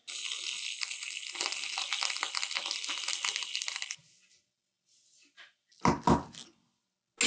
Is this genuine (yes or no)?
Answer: yes